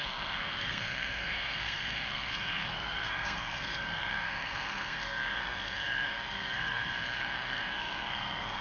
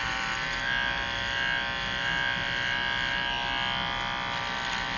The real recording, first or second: second